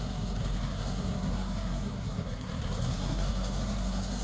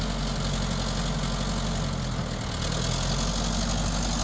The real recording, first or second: second